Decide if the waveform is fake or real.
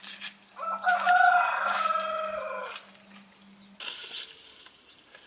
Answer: real